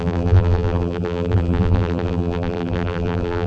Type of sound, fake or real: fake